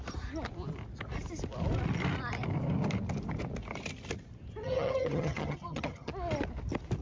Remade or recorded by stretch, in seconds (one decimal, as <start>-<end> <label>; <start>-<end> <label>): 0.0-4.6 recorded; 4.6-6.1 remade; 6.1-7.0 recorded